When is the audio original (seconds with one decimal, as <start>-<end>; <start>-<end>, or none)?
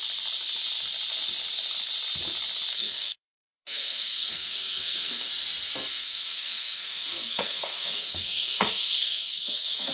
0.0-2.7; 5.3-5.9